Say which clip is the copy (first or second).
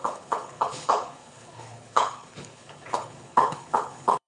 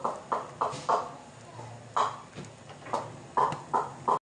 first